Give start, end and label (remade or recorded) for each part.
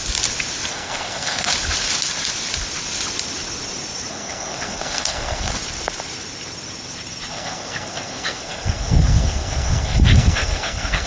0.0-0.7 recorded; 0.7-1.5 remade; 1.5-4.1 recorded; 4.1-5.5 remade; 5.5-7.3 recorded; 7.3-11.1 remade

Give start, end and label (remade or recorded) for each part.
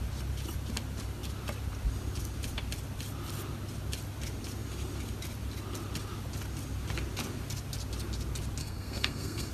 0.0-8.6 recorded; 8.6-9.5 remade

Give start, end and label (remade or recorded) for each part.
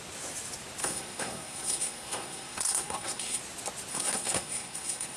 0.0-0.8 recorded; 0.8-3.4 remade; 3.4-3.9 recorded; 3.9-5.2 remade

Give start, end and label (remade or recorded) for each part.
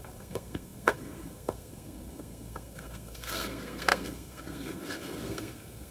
0.0-5.9 remade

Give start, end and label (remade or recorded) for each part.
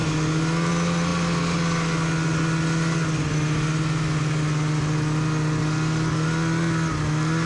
0.0-7.5 recorded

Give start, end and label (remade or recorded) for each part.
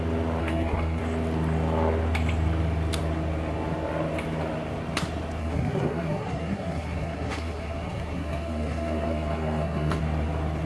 0.0-0.4 recorded; 0.4-1.0 remade; 1.0-5.4 recorded; 5.4-10.0 remade; 10.0-10.7 recorded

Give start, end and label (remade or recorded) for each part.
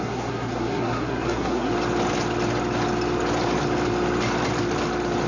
0.0-1.7 remade; 1.7-5.3 recorded